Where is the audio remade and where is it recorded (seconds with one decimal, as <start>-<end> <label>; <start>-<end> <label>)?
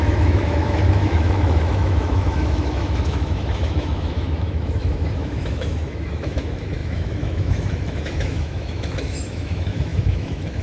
0.0-10.6 remade